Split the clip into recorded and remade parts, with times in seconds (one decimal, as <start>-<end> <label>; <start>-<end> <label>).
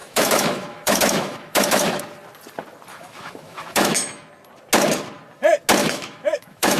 0.0-2.0 remade; 2.0-2.9 recorded; 2.9-4.3 remade; 4.3-5.8 recorded; 5.8-6.8 remade